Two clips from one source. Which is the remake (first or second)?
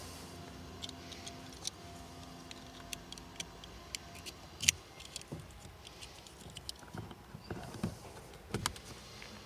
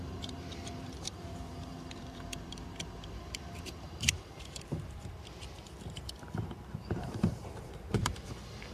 second